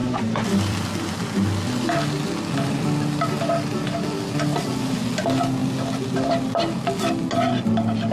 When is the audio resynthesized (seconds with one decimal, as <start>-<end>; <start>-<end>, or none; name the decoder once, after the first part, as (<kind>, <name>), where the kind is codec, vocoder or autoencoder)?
0.0-1.1 (vocoder, BigVGAN v2); 5.6-6.4